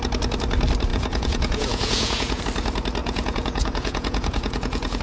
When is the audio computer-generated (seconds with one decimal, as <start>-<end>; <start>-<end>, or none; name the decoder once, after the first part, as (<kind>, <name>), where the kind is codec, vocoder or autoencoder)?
0.9-2.4 (vocoder, Vocos); 3.0-5.0